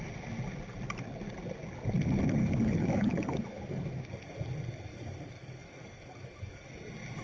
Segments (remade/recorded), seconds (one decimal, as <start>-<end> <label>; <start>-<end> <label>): 0.0-2.4 recorded; 2.4-4.0 remade; 4.0-4.9 recorded; 4.9-6.7 remade; 6.7-7.2 recorded